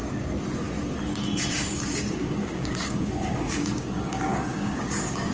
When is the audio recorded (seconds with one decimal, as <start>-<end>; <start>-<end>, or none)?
0.0-1.5